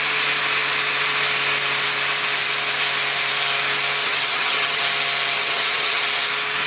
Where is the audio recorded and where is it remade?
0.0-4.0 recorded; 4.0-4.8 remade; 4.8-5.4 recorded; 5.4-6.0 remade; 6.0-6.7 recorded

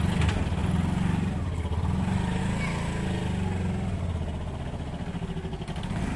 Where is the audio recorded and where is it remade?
0.0-6.2 recorded